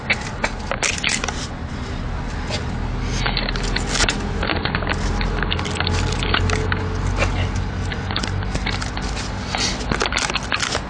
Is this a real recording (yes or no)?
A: yes